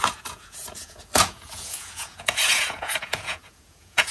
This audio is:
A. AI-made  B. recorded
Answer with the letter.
A